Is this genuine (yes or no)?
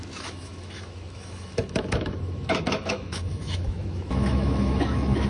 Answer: no